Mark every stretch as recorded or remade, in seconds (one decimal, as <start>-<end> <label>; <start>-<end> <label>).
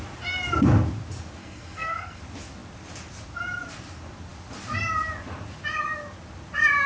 0.0-1.4 recorded; 1.4-2.2 remade; 2.2-6.9 recorded